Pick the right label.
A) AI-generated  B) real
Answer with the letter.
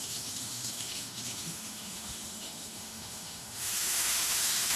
A